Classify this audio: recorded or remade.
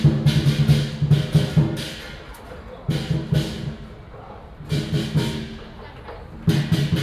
recorded